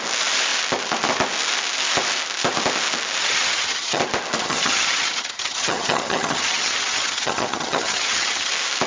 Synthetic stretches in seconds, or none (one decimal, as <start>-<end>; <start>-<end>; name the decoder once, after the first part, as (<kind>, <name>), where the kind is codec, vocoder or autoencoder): 3.2-4.0 (vocoder, HiFi-GAN); 4.4-8.5